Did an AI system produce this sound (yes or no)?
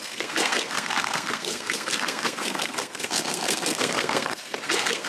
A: yes